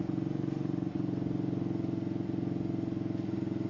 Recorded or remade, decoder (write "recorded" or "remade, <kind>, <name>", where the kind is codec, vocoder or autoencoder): recorded